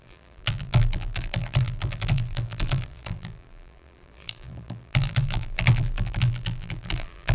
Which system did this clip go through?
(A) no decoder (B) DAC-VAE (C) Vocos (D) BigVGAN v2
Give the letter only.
D